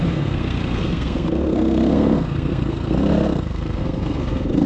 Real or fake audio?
fake